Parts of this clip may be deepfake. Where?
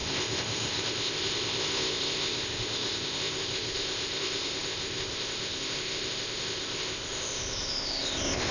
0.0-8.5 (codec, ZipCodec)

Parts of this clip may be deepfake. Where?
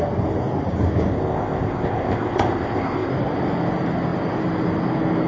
1.1-3.1 (codec, ZipCodec)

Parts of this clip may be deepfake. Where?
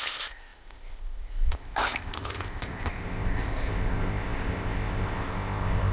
0.0-5.9 (codec, ZipCodec)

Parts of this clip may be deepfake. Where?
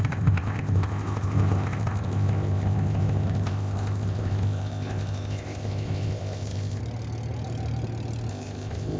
0.0-6.8 (codec, ZipCodec); 8.3-9.0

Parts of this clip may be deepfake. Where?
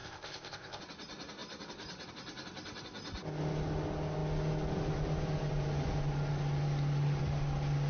0.0-0.8 (codec, ZipCodec)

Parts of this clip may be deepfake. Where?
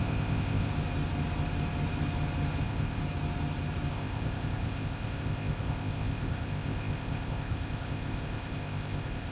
0.0-0.7 (codec, ZipCodec); 2.6-3.0; 3.9-9.3